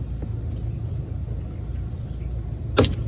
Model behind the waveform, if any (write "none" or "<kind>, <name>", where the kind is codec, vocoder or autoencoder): none